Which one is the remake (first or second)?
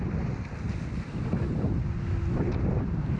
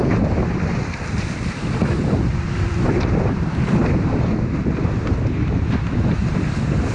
second